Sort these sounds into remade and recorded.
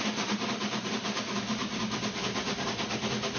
recorded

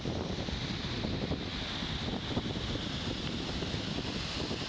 remade